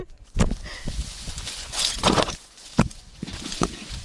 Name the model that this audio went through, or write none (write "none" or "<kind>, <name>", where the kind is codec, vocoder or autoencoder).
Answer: vocoder, Vocos